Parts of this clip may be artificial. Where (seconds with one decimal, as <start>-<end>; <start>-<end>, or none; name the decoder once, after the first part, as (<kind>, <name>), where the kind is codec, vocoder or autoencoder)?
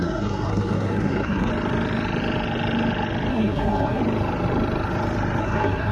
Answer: 0.0-1.5 (codec, SNAC); 3.3-4.0; 5.4-5.9